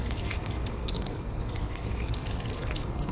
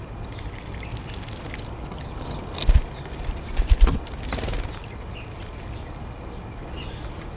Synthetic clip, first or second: first